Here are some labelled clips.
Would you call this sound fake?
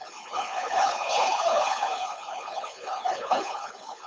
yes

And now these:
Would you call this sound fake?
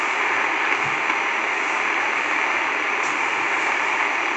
no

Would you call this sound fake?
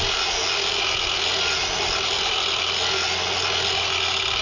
no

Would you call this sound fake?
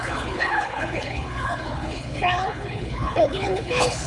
yes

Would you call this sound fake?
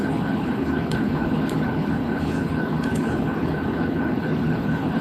yes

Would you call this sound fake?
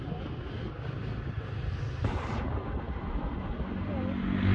no